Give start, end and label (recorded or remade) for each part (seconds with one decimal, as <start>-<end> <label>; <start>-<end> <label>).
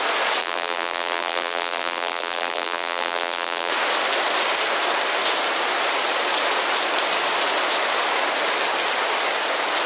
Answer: 0.0-0.4 recorded; 0.4-3.7 remade; 3.7-9.9 recorded